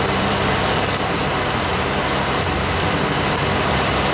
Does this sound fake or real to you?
fake